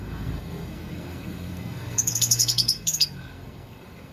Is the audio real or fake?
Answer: fake